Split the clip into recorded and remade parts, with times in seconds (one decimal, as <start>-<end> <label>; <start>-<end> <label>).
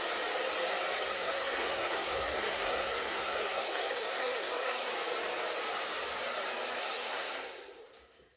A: 0.0-1.1 recorded; 1.1-4.9 remade; 4.9-6.8 recorded; 6.8-7.9 remade; 7.9-8.4 recorded